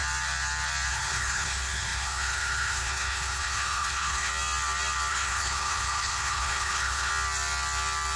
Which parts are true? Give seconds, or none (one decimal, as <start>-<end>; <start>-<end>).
0.0-0.9; 4.3-5.1; 7.1-8.2